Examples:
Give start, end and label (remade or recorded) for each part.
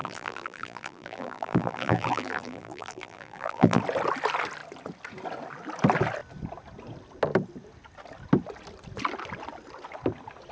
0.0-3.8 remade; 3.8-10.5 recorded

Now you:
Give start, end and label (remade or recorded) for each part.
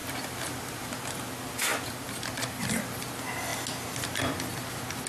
0.0-1.2 remade; 1.2-1.7 recorded; 1.7-2.8 remade; 2.8-5.1 recorded